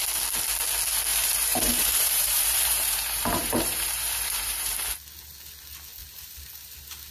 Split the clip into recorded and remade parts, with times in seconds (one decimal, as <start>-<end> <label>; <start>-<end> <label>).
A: 0.0-1.1 recorded; 1.1-4.9 remade; 4.9-7.1 recorded